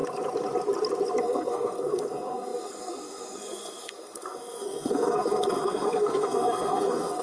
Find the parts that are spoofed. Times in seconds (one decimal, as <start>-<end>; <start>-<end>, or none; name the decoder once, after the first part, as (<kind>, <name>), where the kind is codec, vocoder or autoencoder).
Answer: 1.2-7.2 (codec, SNAC)